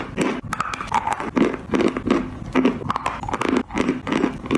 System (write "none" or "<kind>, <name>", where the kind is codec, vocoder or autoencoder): none